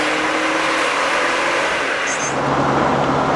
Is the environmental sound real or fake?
real